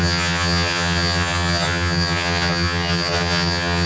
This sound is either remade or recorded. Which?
remade